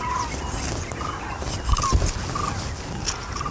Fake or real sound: real